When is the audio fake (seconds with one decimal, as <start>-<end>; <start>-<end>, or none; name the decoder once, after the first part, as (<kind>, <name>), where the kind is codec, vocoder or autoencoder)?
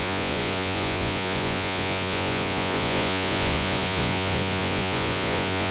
0.0-5.7 (vocoder, Vocos)